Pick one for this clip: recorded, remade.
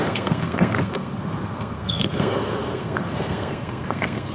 remade